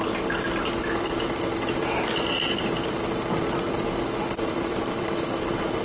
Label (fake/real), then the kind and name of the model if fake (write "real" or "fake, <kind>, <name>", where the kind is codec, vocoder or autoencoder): fake, vocoder, BigVGAN v2